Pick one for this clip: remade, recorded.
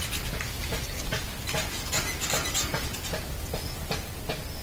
recorded